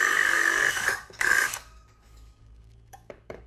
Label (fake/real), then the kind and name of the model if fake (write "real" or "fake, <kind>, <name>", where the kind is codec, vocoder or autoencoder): fake, codec, DAC